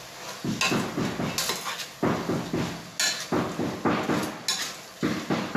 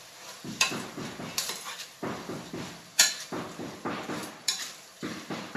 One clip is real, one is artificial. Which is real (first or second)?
first